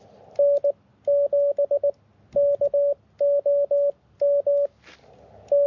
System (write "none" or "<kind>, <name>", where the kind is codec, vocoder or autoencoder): none